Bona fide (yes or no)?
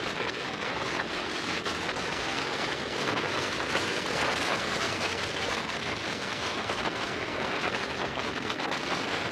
no